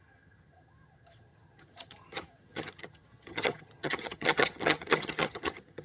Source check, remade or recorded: remade